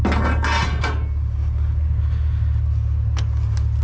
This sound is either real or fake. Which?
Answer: real